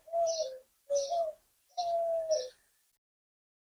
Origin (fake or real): fake